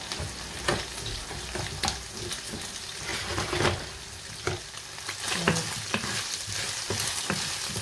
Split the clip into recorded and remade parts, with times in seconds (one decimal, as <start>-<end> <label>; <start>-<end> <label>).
0.0-7.8 recorded